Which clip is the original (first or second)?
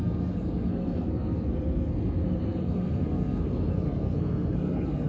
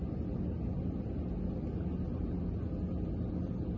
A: second